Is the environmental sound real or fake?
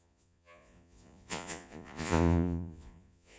fake